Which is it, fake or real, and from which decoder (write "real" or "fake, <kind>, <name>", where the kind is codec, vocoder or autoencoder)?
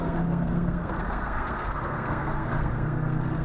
fake, codec, SNAC